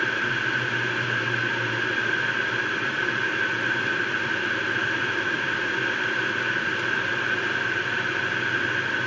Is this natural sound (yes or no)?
yes